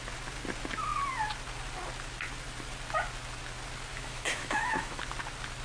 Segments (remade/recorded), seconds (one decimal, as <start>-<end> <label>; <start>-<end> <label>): 0.0-3.9 recorded; 3.9-5.0 remade; 5.0-5.6 recorded

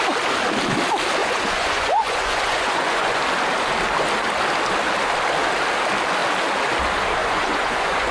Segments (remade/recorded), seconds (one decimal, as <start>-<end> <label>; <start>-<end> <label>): 0.0-1.2 recorded; 1.2-3.2 remade; 3.2-7.2 recorded; 7.2-8.1 remade

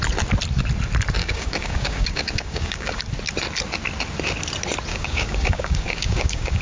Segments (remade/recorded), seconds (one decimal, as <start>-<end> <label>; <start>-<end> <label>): 0.0-1.2 recorded; 1.2-3.0 remade; 3.0-4.9 recorded; 4.9-6.6 remade

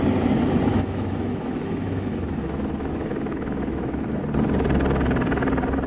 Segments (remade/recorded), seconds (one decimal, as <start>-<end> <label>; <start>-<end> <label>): 0.0-0.7 recorded; 0.7-4.2 remade; 4.2-5.9 recorded

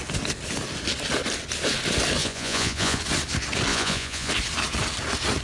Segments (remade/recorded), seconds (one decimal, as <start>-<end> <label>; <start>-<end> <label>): 0.0-2.2 recorded; 2.2-3.0 remade; 3.0-3.7 recorded; 3.7-4.3 remade; 4.3-5.4 recorded

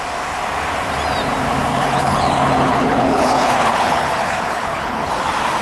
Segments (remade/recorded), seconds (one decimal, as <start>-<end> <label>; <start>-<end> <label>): 0.0-1.7 recorded; 1.7-5.1 remade; 5.1-5.6 recorded

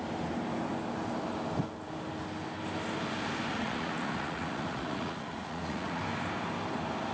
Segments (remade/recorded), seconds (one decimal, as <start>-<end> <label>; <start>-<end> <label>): 0.0-3.5 recorded; 3.5-6.0 remade; 6.0-7.1 recorded

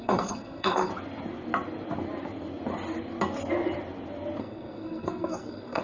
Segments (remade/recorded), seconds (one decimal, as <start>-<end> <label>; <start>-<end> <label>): 0.0-0.9 remade; 0.9-4.4 recorded; 4.4-5.8 remade